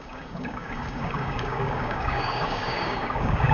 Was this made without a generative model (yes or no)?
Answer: no